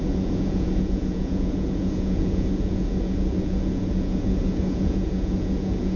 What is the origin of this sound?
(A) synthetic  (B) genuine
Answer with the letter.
A